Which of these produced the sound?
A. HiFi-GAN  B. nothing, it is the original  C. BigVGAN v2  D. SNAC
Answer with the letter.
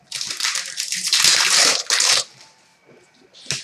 B